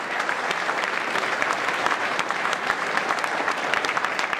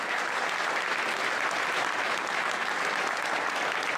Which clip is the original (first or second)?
second